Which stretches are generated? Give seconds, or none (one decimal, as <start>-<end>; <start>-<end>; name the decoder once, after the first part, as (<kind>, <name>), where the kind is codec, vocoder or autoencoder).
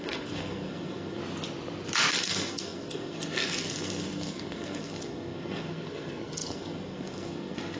0.0-1.2 (codec, SNAC); 2.1-7.8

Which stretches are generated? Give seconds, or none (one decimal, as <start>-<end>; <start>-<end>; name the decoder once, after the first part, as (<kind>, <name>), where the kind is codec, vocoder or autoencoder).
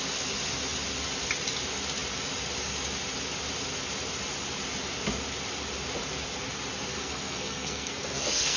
6.9-8.6 (codec, SNAC)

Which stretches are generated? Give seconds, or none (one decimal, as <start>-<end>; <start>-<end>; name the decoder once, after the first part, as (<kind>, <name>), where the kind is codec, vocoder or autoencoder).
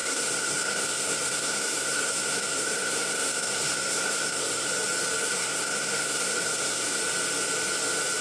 0.0-4.7 (codec, SNAC); 5.2-7.0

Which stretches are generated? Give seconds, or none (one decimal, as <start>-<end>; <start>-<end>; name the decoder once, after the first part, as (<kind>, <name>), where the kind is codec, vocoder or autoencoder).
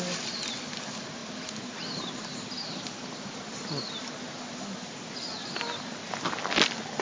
none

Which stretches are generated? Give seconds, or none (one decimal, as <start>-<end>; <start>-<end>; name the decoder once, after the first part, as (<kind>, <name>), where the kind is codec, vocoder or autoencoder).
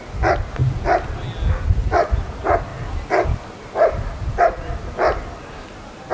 none